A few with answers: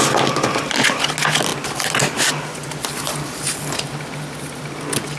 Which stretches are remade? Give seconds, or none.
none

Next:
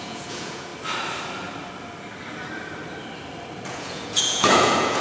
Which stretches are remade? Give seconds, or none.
0.0-0.7 (vocoder, Vocos); 3.7-5.0

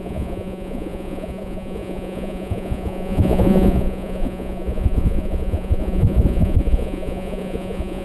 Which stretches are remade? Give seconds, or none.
0.0-8.0 (vocoder, Vocos)

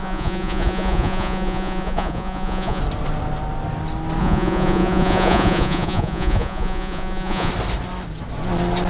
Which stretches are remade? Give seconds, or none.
0.0-2.8 (vocoder, Vocos); 4.2-7.5

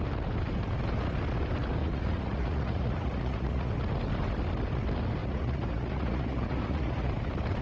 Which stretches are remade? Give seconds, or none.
1.8-3.7 (vocoder, Vocos); 5.2-7.1